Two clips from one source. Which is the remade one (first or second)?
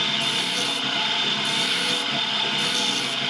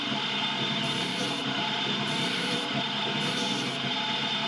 second